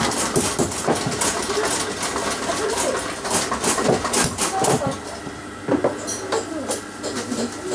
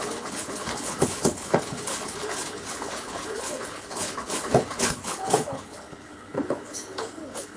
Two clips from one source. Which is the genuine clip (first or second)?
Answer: first